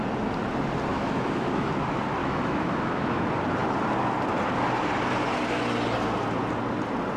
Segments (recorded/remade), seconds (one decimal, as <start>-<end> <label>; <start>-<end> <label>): 0.0-0.9 recorded; 0.9-1.7 remade; 1.7-2.2 recorded; 2.2-3.2 remade; 3.2-7.2 recorded